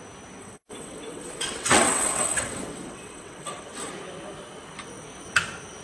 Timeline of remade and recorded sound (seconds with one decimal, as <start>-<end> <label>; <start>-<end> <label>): 0.0-0.4 recorded; 0.4-3.9 remade; 3.9-5.8 recorded